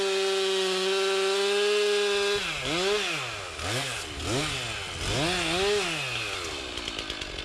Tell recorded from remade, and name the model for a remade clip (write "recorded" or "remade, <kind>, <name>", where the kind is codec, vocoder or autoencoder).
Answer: recorded